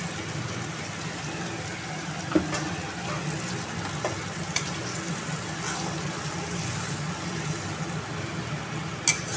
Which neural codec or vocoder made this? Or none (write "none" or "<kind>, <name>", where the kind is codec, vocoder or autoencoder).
none